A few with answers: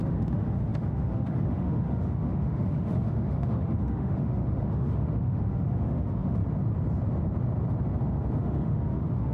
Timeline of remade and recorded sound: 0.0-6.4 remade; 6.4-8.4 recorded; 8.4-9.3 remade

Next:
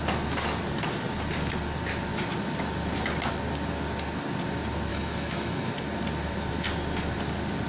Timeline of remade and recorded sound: 0.0-4.9 recorded; 4.9-5.7 remade; 5.7-7.7 recorded

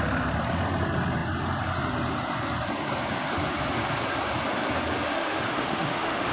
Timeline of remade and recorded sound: 0.0-5.1 recorded; 5.1-6.3 remade

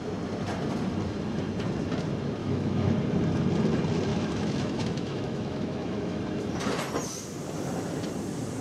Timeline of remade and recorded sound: 0.0-2.4 recorded; 2.4-2.9 remade; 2.9-4.1 recorded; 4.1-6.2 remade; 6.2-8.6 recorded

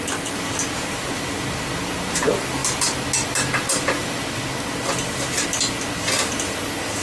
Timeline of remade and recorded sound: 0.0-7.0 recorded